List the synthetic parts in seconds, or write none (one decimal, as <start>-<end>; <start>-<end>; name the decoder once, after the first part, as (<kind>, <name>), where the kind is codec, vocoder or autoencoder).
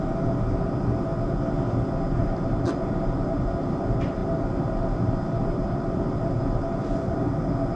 0.0-1.1 (vocoder, BigVGAN v2); 2.1-7.8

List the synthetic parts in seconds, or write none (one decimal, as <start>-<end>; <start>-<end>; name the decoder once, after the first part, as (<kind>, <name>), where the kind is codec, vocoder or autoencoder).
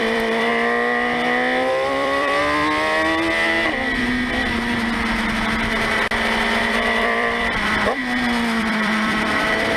0.0-0.5 (vocoder, BigVGAN v2); 1.7-2.4; 6.6-8.0; 8.6-9.8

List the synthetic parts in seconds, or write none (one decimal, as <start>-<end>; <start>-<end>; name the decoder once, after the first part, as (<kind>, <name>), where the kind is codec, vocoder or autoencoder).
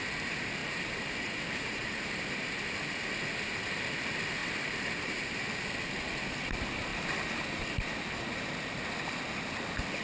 0.6-2.2 (vocoder, BigVGAN v2); 4.4-5.1; 6.9-7.6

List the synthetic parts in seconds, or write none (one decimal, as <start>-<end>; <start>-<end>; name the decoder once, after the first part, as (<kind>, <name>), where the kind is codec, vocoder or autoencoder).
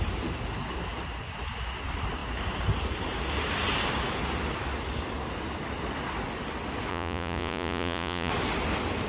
6.9-8.3 (vocoder, Vocos)